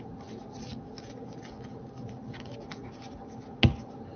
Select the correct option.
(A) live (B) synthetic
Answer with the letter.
A